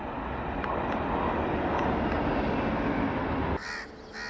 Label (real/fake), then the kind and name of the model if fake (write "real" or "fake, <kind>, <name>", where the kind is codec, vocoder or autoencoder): real